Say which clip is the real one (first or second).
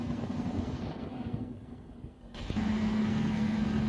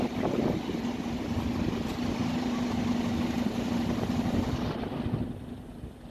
second